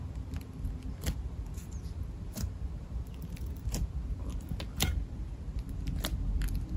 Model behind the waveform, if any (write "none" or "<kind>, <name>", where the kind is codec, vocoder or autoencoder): none